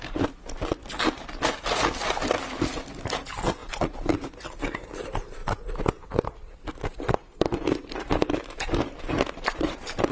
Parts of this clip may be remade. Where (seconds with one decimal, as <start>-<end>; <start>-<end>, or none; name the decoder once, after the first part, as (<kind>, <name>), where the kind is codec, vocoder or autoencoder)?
3.6-4.8 (vocoder, BigVGAN v2); 5.4-10.1